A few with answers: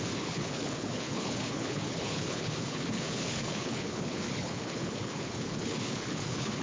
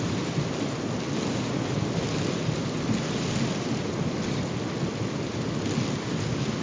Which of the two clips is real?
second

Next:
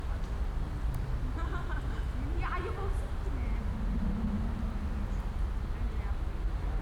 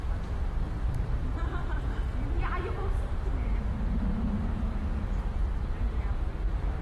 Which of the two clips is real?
first